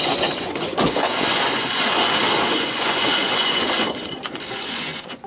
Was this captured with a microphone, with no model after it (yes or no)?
no